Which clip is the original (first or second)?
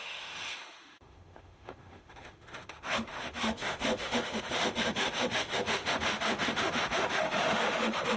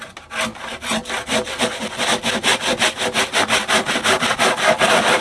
second